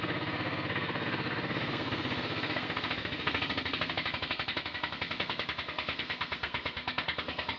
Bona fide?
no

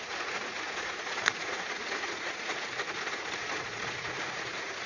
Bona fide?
no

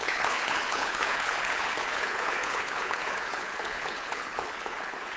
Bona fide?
no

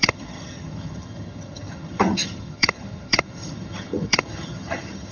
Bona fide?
no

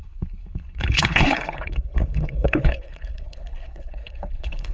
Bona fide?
no